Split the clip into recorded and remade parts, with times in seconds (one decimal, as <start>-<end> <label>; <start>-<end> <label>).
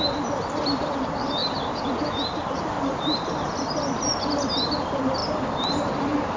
0.0-1.4 recorded; 1.4-2.0 remade; 2.0-6.4 recorded